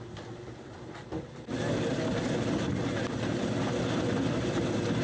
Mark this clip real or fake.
real